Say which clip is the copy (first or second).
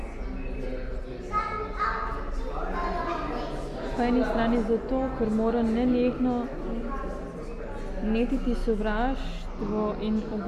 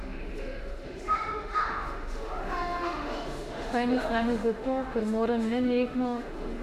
second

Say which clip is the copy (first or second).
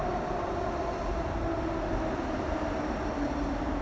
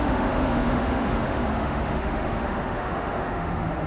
second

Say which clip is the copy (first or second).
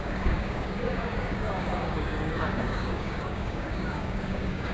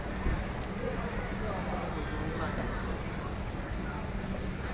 first